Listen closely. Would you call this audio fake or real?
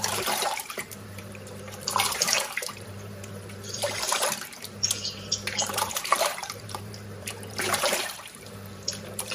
fake